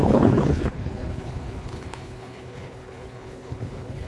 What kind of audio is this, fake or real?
fake